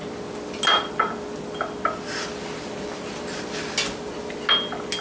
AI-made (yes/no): no